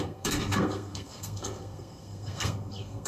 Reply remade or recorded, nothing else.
remade